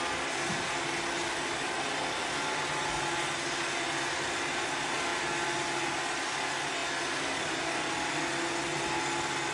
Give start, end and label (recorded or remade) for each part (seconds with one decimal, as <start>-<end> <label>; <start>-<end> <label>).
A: 0.0-9.5 recorded